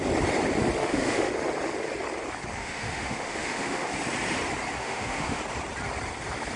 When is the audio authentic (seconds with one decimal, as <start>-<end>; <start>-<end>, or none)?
0.0-0.8; 1.3-2.6; 3.9-4.8; 5.4-6.6